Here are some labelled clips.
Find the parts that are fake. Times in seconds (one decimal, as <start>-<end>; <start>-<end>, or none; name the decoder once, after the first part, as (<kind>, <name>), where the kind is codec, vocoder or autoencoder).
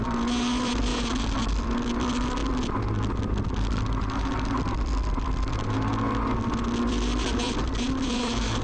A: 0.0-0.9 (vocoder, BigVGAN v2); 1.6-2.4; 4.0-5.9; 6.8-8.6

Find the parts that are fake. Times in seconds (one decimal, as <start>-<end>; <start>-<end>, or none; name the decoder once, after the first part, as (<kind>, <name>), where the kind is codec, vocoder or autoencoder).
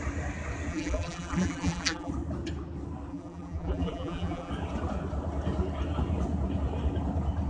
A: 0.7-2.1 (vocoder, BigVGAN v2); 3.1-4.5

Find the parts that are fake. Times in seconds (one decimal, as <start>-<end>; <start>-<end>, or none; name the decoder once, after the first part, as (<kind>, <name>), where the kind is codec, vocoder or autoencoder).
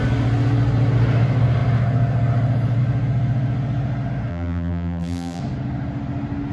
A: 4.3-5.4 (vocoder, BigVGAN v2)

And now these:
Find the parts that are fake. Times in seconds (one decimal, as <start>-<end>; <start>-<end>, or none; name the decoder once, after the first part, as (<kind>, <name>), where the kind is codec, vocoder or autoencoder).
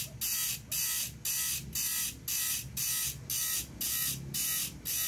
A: none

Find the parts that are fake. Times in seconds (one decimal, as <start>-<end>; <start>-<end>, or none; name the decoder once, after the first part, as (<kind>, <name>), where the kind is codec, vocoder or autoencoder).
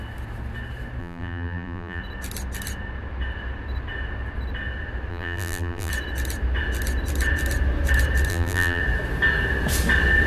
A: 1.0-2.0 (vocoder, BigVGAN v2); 5.1-5.9; 8.3-8.8